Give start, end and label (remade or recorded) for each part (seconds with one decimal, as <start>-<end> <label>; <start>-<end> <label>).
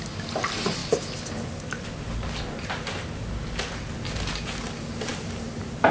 0.0-5.1 recorded; 5.1-5.9 remade